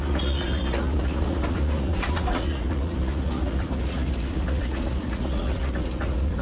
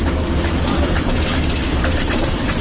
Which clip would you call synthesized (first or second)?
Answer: first